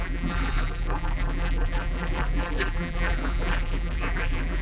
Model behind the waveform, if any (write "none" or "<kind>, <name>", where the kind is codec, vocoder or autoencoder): vocoder, BigVGAN v2